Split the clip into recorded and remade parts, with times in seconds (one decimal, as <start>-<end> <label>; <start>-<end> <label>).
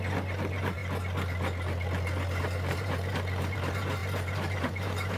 0.0-0.8 remade; 0.8-2.4 recorded; 2.4-5.2 remade